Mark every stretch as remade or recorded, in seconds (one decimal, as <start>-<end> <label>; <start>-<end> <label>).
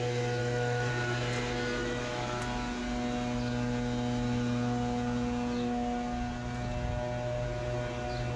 0.0-0.4 recorded; 0.4-0.9 remade; 0.9-1.8 recorded; 1.8-2.4 remade; 2.4-8.4 recorded